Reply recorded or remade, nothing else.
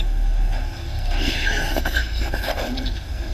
remade